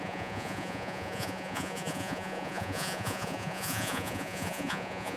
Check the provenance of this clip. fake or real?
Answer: fake